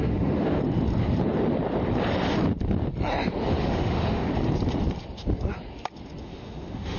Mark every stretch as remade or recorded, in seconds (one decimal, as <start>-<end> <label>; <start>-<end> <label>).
0.0-0.6 remade; 0.6-3.6 recorded; 3.6-4.3 remade; 4.3-6.2 recorded; 6.2-7.0 remade